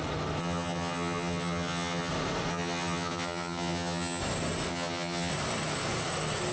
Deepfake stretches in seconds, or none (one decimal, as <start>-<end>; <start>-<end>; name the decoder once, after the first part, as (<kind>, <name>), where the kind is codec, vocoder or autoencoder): 0.4-2.1 (vocoder, HiFi-GAN); 2.5-4.2; 4.7-5.3